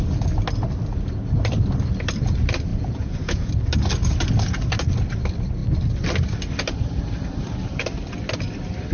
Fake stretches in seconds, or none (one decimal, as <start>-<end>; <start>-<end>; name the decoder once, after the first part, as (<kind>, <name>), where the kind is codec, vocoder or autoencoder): 2.7-3.5 (vocoder, Vocos)